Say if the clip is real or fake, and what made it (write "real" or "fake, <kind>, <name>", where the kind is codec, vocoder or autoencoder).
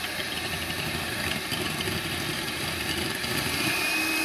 fake, vocoder, BigVGAN v2